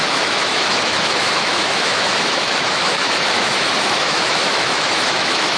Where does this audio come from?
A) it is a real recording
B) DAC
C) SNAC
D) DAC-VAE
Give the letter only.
D